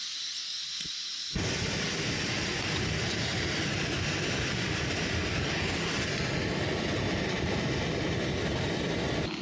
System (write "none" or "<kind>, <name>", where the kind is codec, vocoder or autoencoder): none